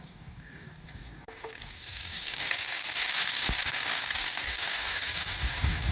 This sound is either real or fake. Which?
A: fake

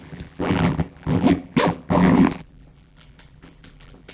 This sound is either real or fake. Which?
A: fake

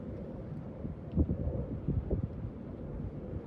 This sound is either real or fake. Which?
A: real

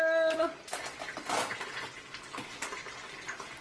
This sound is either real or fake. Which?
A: real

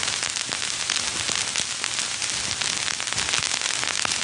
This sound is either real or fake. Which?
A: real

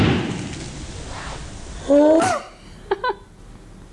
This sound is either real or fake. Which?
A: real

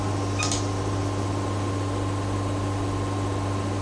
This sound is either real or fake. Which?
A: real